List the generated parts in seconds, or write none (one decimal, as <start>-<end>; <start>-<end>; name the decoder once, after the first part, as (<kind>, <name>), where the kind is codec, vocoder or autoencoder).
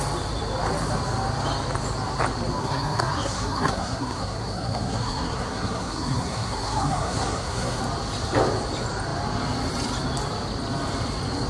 2.6-7.8 (codec, SNAC)